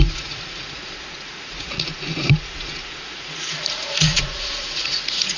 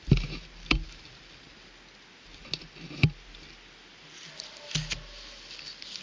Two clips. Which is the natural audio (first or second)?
second